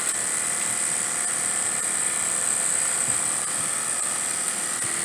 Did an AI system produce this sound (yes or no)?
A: no